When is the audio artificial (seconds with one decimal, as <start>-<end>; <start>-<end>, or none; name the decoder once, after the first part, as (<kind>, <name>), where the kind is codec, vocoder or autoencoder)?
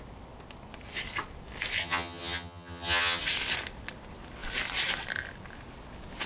1.8-3.2 (vocoder, HiFi-GAN)